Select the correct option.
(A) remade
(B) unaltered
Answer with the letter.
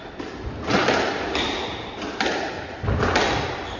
B